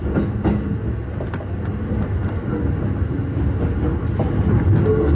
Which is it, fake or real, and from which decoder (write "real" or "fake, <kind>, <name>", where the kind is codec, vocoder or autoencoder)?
real